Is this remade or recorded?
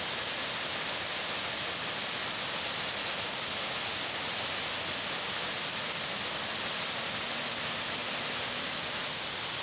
recorded